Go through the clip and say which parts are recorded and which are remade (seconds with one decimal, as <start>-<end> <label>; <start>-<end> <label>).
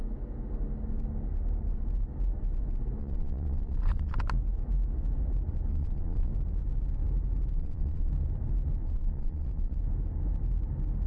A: 0.0-3.0 recorded; 3.0-4.2 remade; 4.2-5.7 recorded; 5.7-6.3 remade; 6.3-7.5 recorded; 7.5-8.1 remade; 8.1-8.8 recorded; 8.8-9.8 remade; 9.8-11.1 recorded